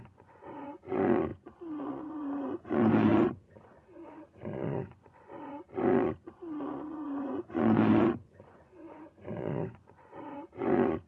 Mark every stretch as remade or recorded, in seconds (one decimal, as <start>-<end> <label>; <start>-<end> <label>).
0.0-11.1 remade